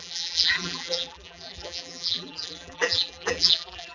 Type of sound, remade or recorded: remade